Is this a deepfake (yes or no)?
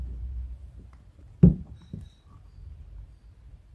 yes